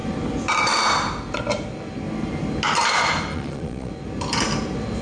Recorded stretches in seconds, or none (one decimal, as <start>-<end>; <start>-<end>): 0.0-3.3; 3.9-5.0